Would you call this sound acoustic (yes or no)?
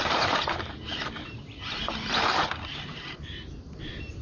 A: no